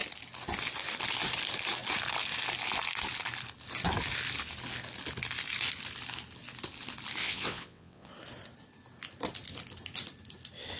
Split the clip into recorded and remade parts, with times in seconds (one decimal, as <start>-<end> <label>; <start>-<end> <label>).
0.0-7.2 recorded; 7.2-8.1 remade; 8.1-10.8 recorded